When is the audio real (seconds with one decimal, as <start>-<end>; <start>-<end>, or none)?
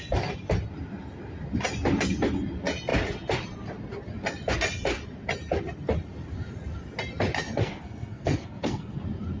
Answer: 0.0-7.6; 9.0-9.4